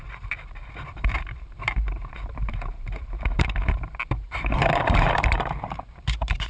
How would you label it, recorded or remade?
remade